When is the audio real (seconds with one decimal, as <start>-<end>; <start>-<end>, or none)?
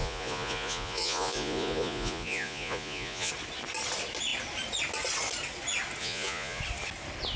3.3-6.0; 6.6-7.4